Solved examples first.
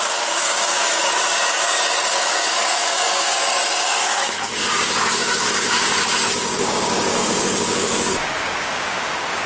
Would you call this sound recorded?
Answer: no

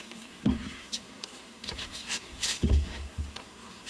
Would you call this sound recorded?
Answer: no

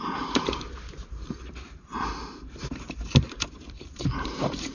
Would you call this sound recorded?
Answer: no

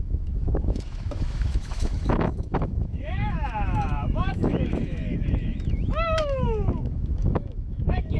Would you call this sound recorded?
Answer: no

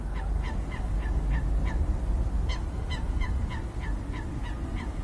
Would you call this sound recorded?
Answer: yes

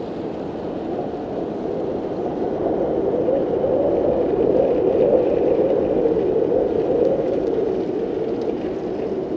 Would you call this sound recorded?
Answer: yes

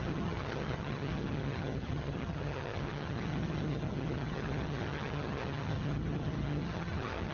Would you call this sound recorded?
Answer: no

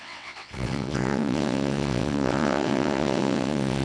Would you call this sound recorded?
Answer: no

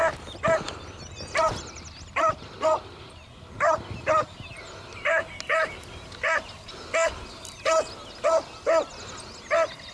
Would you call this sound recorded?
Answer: yes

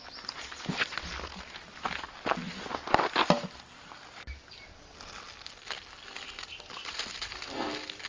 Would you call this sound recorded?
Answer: yes